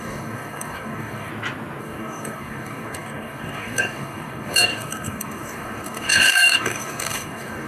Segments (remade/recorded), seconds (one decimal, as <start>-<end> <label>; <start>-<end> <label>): 0.0-1.3 remade; 1.3-1.8 recorded; 1.8-7.7 remade